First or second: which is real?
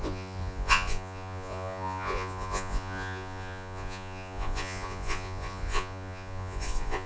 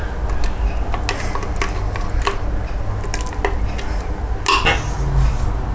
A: second